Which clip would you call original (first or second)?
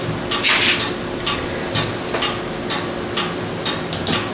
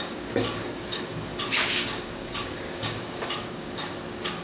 first